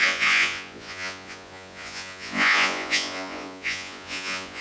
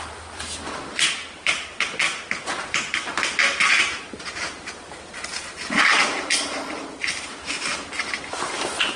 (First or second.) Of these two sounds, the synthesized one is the first